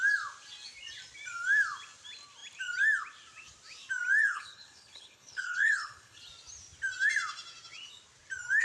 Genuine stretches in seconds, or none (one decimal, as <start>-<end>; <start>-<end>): 0.0-4.2; 6.2-8.6